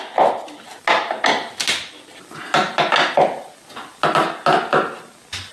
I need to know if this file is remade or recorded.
recorded